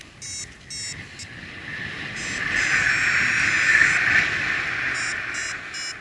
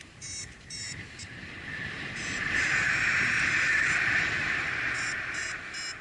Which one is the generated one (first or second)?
second